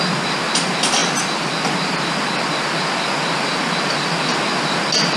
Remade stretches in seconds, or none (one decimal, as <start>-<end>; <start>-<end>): none